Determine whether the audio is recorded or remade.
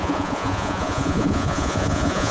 remade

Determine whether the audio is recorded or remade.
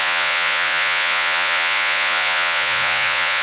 remade